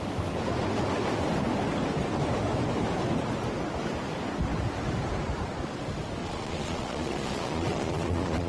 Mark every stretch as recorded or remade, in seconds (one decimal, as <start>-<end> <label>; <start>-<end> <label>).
0.0-6.2 recorded; 6.2-8.5 remade